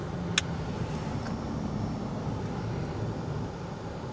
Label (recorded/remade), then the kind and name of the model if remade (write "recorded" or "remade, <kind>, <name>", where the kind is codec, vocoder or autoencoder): recorded